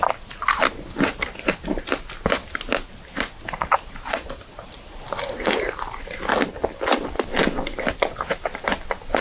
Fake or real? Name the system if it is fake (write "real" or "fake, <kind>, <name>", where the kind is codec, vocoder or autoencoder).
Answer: real